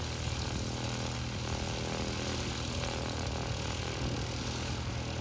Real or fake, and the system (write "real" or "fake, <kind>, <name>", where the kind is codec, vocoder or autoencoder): real